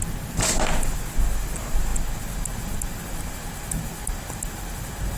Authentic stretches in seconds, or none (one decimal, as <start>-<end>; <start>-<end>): 0.0-5.2